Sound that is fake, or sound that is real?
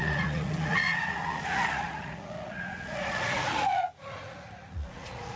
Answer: fake